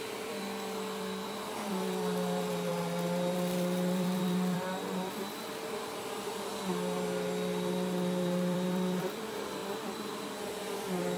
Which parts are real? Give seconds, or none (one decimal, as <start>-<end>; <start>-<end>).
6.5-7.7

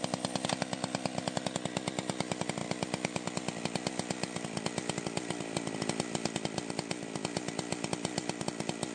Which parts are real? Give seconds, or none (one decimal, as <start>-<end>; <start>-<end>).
0.0-8.9

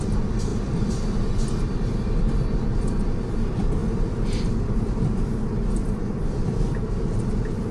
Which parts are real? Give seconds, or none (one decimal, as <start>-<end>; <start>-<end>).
0.0-0.5; 2.2-3.8; 7.2-7.7

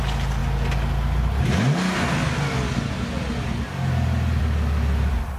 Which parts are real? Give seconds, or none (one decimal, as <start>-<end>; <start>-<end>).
0.0-5.4

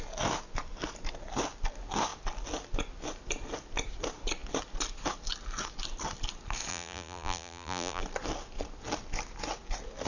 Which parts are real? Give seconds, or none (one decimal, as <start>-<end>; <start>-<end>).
0.0-6.7; 8.0-10.1

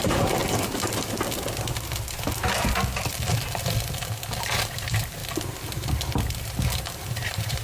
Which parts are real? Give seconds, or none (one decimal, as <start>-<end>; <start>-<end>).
0.4-4.4; 5.2-7.0